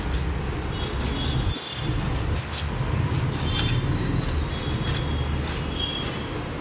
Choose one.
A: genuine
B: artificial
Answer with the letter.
A